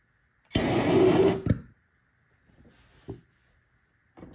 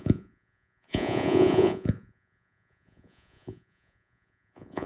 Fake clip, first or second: second